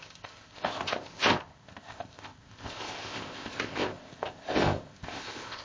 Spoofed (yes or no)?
yes